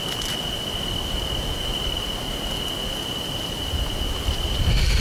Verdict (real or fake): real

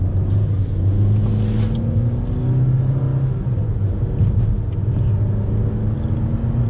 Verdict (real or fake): real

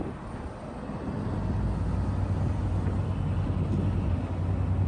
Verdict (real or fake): real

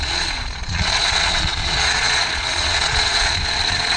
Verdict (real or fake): fake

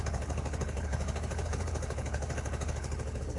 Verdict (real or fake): fake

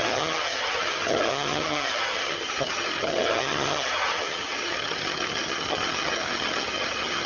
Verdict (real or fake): fake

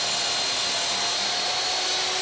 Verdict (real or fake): real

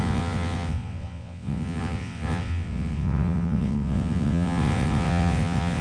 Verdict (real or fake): fake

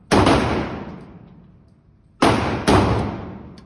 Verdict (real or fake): real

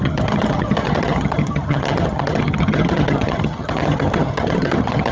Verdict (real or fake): fake